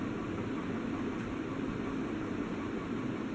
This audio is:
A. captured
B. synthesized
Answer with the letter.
A